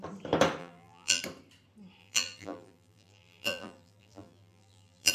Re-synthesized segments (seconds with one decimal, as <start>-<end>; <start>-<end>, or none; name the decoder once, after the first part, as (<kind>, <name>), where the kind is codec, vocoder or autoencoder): 0.6-1.2 (vocoder, BigVGAN v2); 2.0-5.1